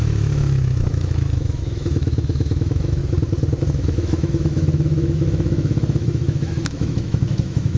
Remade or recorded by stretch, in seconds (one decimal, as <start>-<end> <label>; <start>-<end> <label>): 0.0-3.0 remade; 3.0-3.7 recorded; 3.7-7.8 remade